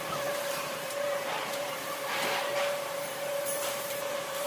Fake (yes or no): yes